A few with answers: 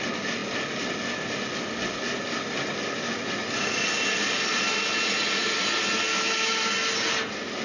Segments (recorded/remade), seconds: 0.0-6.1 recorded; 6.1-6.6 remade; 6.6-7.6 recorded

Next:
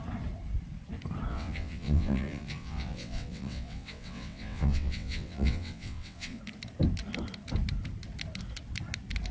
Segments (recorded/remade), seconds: 0.0-1.3 recorded; 1.3-6.4 remade; 6.4-9.3 recorded

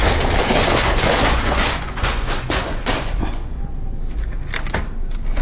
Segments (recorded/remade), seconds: 0.0-0.4 recorded; 0.4-3.6 remade; 3.6-5.4 recorded

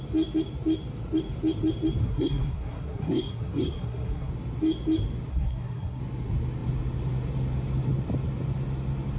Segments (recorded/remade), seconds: 0.0-2.0 recorded; 2.0-4.3 remade; 4.3-5.3 recorded; 5.3-6.0 remade; 6.0-9.2 recorded

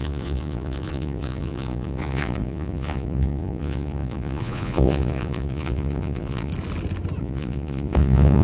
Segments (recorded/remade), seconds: 0.0-6.5 remade; 6.5-7.2 recorded; 7.2-8.4 remade

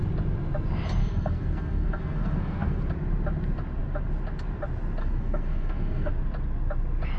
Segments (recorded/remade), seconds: 0.0-1.0 recorded; 1.0-2.8 remade; 2.8-5.0 recorded; 5.0-6.1 remade; 6.1-7.2 recorded

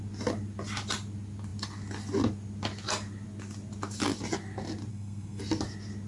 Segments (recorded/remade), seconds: 0.0-4.9 recorded; 4.9-5.4 remade; 5.4-6.1 recorded